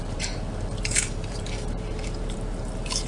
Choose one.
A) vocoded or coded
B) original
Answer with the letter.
A